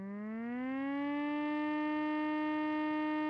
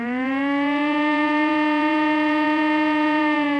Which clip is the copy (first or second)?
second